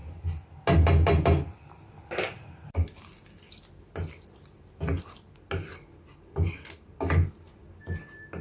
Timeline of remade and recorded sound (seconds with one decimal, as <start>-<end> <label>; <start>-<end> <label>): 0.0-8.4 recorded